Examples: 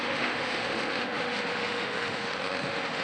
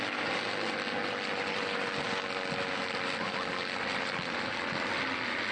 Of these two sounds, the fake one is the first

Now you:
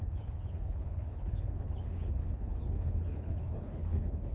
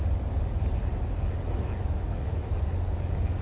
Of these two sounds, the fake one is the first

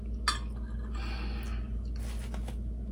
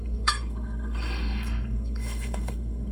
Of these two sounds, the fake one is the second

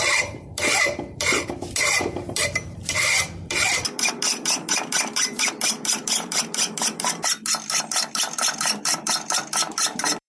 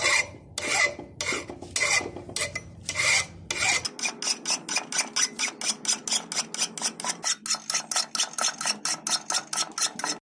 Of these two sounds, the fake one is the first